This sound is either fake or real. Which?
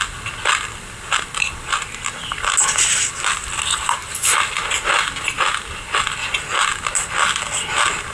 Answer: real